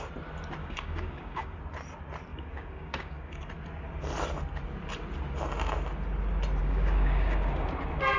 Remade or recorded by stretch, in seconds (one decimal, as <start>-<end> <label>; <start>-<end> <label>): 0.0-0.6 recorded; 0.6-1.6 remade; 1.6-2.3 recorded; 2.3-3.5 remade; 3.5-6.6 recorded; 6.6-7.7 remade; 7.7-8.2 recorded